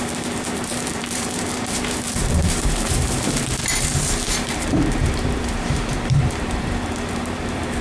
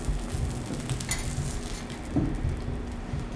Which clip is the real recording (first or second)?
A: second